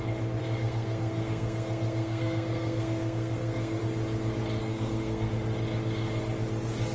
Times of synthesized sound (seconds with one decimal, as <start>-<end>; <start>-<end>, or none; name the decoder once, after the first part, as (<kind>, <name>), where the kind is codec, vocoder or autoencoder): 0.4-3.8 (codec, SNAC); 4.6-5.3